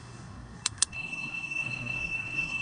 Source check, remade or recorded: remade